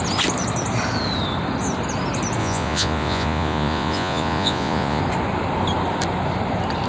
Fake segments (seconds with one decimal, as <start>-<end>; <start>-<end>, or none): 2.4-5.0